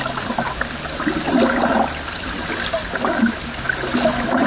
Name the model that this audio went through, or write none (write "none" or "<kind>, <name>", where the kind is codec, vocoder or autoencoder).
none